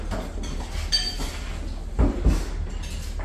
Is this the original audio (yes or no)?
yes